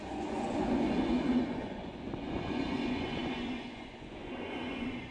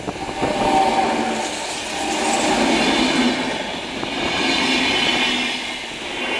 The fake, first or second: first